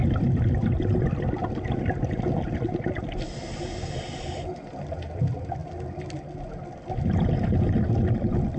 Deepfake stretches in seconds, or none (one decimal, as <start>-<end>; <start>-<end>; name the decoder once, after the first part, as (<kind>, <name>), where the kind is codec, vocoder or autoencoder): none